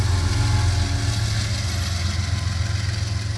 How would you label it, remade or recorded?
recorded